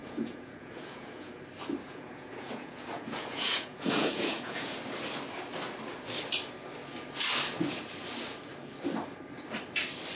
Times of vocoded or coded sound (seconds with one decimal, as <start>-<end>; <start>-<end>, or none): 0.0-1.3; 1.8-4.8